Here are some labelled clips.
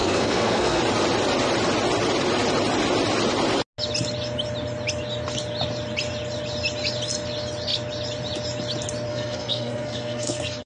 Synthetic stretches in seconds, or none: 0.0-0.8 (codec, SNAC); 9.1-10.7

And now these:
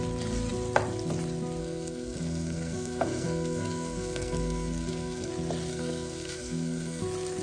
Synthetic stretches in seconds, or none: 1.6-5.3 (codec, SNAC); 5.7-7.0

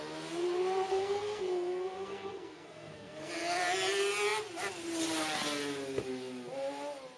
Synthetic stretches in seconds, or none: 0.9-3.3 (codec, SNAC)

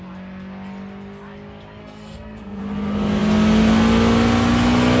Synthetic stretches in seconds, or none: 1.8-2.6 (codec, SNAC)

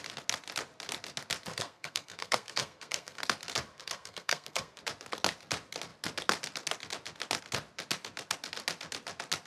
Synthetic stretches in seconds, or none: 1.5-3.2 (codec, SNAC); 3.7-4.8